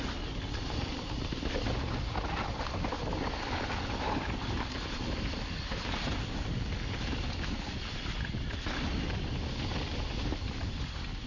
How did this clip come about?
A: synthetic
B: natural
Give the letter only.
B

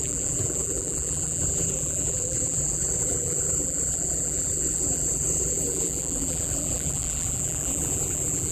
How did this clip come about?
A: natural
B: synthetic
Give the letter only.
B